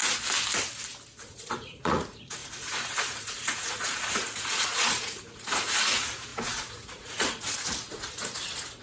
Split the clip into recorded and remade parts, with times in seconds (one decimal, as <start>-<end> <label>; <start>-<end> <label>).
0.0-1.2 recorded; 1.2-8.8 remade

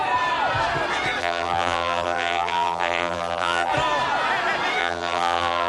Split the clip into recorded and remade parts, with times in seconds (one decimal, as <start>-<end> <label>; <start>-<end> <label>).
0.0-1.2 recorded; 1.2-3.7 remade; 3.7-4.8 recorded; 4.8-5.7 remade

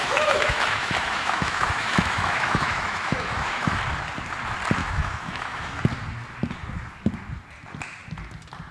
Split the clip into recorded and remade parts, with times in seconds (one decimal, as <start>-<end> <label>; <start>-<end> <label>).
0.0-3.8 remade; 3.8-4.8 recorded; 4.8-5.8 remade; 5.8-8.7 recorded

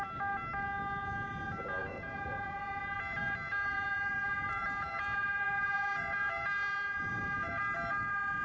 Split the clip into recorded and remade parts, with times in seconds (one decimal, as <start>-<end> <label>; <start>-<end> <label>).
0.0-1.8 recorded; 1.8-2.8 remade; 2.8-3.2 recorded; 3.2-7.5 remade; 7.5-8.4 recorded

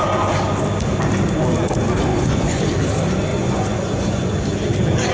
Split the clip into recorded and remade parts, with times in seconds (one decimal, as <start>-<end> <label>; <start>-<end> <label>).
0.0-2.1 recorded; 2.1-2.6 remade; 2.6-3.3 recorded; 3.3-4.3 remade; 4.3-5.1 recorded

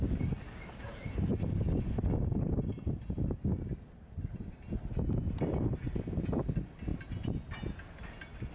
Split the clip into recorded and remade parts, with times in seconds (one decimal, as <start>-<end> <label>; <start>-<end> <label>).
0.0-8.5 recorded

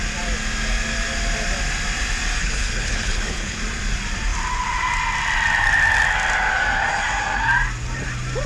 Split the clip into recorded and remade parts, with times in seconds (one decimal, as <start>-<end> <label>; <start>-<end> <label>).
0.0-2.4 recorded; 2.4-3.6 remade; 3.6-8.5 recorded

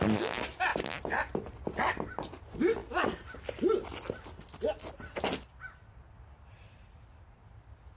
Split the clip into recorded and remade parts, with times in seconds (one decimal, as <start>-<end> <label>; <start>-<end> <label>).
0.0-8.0 recorded